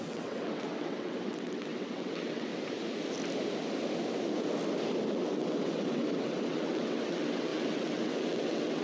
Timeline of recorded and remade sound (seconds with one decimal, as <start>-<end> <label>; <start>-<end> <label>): 0.0-2.5 remade; 2.5-5.1 recorded; 5.1-8.8 remade